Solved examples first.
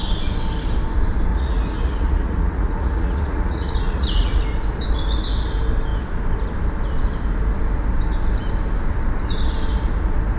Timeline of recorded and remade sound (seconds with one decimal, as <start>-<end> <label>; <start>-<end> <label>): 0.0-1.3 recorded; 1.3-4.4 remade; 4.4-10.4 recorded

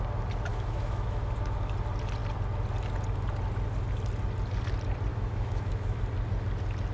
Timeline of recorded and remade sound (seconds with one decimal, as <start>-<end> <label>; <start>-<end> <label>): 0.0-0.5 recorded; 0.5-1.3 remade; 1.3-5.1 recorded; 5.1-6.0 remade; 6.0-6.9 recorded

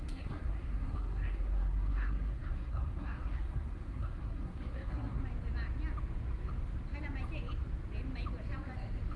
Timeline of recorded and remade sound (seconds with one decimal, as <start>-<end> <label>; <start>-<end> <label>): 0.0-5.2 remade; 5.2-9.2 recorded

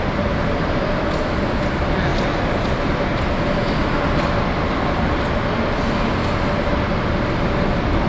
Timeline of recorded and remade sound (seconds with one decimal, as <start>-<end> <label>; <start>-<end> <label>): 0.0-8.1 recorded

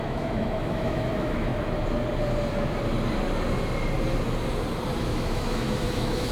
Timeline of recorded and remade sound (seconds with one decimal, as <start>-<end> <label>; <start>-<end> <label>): 0.0-1.5 remade; 1.5-5.0 recorded; 5.0-6.3 remade

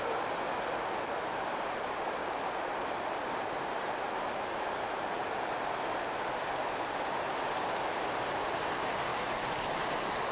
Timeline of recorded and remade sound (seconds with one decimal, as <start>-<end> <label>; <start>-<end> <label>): 0.0-2.2 recorded; 2.2-5.7 remade; 5.7-9.1 recorded; 9.1-10.3 remade